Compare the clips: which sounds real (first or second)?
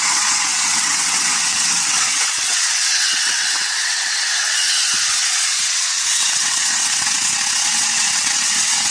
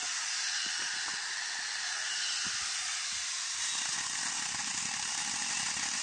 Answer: second